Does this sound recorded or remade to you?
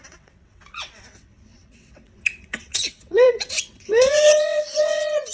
remade